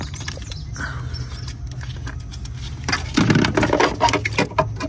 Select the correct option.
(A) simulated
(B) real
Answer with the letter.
B